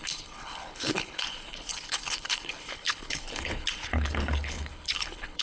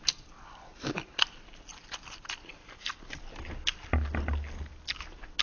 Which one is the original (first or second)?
second